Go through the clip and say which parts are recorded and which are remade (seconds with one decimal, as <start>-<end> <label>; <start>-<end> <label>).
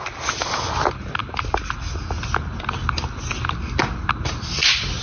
0.0-5.0 recorded